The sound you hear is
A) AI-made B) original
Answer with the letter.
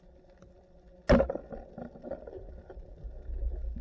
B